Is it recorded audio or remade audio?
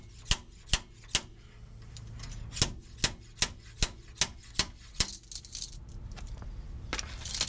recorded